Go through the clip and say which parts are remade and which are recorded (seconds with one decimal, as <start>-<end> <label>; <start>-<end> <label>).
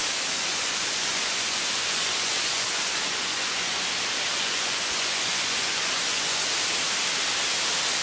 0.0-0.5 recorded; 0.5-3.9 remade; 3.9-4.3 recorded; 4.3-6.5 remade; 6.5-8.0 recorded